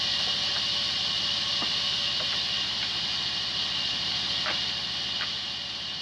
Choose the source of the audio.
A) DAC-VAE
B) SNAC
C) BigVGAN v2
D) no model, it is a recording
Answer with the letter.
D